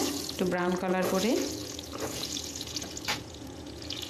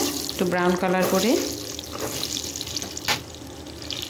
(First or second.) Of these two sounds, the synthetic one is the first